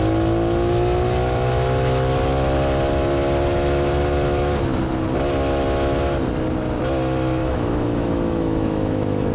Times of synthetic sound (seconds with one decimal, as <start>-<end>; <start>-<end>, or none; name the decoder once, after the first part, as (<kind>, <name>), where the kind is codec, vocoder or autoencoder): 7.4-9.3 (autoencoder, DAC-VAE)